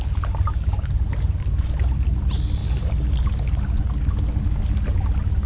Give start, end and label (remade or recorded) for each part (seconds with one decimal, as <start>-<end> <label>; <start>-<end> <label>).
0.0-5.5 recorded